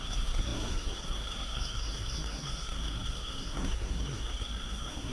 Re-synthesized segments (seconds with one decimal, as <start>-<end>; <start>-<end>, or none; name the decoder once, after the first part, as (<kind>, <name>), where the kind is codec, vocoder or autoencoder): 0.0-5.1 (codec, SNAC)

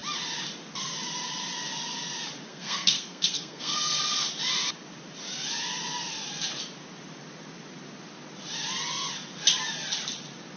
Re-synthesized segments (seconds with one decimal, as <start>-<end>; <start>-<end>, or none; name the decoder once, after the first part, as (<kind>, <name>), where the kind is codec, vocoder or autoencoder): 2.5-4.0 (codec, SNAC)